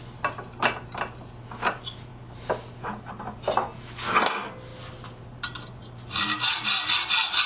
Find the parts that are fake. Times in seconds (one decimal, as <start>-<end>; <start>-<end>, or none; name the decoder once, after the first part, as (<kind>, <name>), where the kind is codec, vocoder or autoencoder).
none